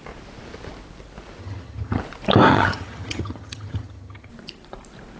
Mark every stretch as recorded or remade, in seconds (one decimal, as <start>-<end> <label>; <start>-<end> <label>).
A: 0.0-1.4 recorded; 1.4-2.0 remade; 2.0-2.5 recorded; 2.5-4.3 remade; 4.3-5.2 recorded